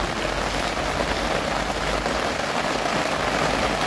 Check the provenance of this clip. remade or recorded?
recorded